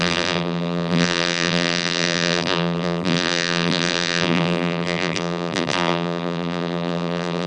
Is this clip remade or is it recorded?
remade